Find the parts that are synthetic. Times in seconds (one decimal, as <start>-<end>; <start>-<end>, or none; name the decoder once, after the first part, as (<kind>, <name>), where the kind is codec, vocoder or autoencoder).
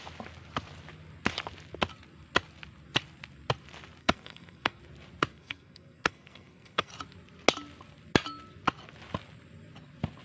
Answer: 4.0-4.8 (codec, SNAC); 5.3-6.9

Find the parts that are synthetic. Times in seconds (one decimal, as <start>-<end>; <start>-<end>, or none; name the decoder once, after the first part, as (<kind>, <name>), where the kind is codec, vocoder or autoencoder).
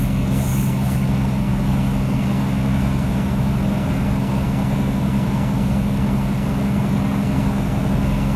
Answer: 0.0-8.4 (codec, SNAC)